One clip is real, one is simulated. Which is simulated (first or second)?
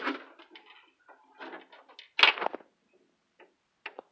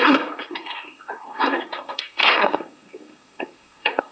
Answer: second